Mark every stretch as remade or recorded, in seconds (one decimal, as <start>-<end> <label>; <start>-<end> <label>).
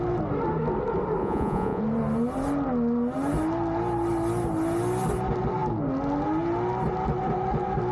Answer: 0.0-1.2 recorded; 1.2-1.8 remade; 1.8-7.9 recorded